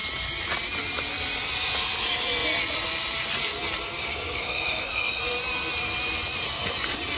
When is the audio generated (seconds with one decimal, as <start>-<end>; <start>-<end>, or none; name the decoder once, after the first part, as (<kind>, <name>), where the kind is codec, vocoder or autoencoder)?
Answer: 4.1-5.2 (codec, SNAC)